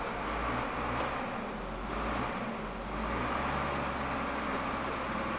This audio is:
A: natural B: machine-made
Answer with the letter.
A